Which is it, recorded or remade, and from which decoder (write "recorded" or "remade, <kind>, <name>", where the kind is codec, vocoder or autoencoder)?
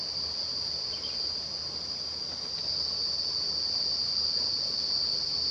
recorded